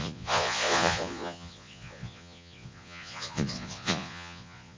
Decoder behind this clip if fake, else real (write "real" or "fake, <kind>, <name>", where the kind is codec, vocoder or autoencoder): fake, vocoder, Vocos